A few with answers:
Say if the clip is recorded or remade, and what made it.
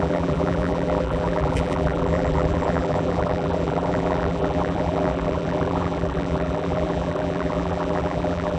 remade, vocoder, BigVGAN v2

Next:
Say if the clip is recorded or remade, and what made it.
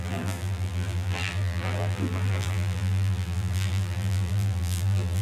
remade, vocoder, BigVGAN v2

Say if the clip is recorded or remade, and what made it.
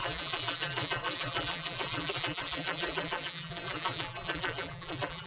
remade, vocoder, BigVGAN v2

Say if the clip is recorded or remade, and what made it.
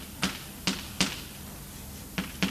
recorded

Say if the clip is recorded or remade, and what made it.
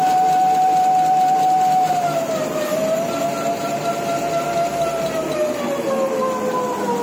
recorded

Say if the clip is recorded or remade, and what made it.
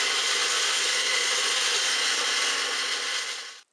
recorded